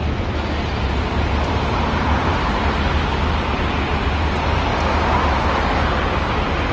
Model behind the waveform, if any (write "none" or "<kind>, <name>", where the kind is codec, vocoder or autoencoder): none